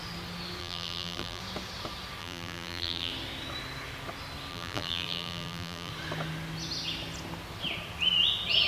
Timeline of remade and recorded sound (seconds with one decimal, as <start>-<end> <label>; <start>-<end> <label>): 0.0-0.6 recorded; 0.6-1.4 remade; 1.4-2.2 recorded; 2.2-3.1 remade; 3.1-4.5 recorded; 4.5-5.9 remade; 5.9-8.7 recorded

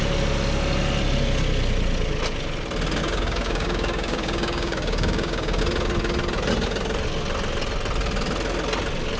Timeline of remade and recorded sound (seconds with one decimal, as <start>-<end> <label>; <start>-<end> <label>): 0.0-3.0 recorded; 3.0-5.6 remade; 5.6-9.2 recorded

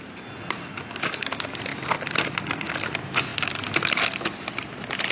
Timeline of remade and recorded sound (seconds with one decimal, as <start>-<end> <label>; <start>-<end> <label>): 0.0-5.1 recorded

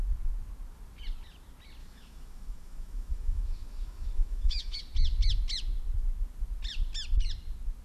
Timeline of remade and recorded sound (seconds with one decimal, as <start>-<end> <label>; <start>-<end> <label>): 0.0-1.8 recorded; 1.8-4.8 remade; 4.8-7.8 recorded

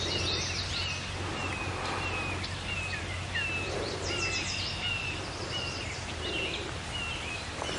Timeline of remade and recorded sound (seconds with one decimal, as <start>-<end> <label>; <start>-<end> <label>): 0.0-7.8 recorded